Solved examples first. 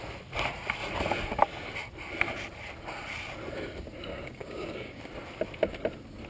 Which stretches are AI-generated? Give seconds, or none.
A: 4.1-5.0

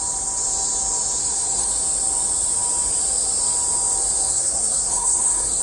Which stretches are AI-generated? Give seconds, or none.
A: 1.2-1.7; 4.3-5.6

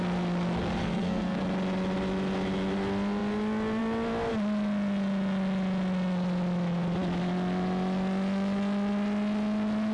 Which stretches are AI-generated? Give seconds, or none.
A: 0.8-1.4

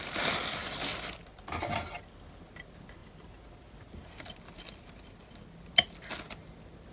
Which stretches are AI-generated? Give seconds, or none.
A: none